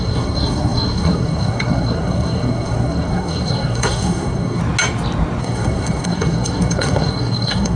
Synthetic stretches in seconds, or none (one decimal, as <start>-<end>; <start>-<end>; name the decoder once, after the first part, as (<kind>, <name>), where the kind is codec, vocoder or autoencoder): 0.0-4.6 (codec, SNAC); 5.4-7.8